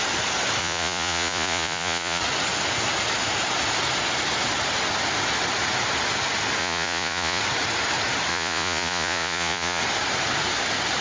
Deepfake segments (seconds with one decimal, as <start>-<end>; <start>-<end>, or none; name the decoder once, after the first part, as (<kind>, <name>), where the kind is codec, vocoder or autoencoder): 0.6-2.2 (vocoder, Vocos); 6.6-7.4; 8.3-9.8